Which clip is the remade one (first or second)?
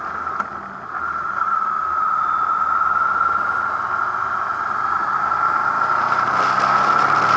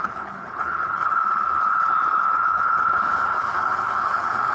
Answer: second